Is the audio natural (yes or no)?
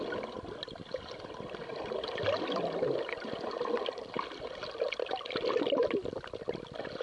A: yes